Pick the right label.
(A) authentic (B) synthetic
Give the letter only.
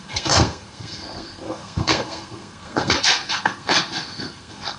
B